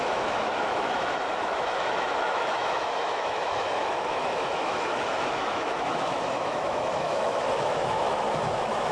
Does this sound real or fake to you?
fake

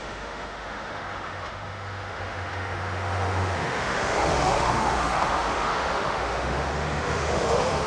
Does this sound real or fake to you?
fake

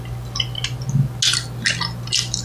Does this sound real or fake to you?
real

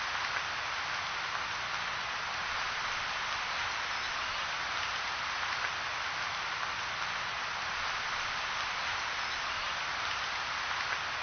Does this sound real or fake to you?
real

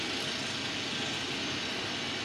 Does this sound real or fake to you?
real